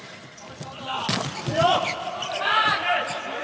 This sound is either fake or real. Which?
real